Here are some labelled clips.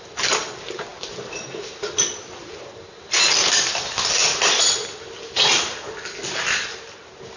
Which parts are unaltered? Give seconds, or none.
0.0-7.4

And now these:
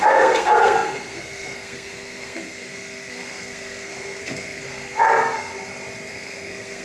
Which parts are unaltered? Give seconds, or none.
5.5-6.1

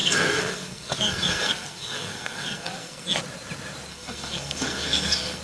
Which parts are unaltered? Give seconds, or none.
3.2-3.9